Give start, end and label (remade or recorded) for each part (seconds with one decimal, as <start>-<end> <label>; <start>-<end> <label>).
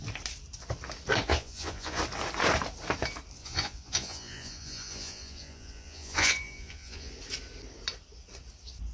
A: 0.0-1.3 recorded; 1.3-2.0 remade; 2.0-3.4 recorded; 3.4-7.1 remade; 7.1-8.9 recorded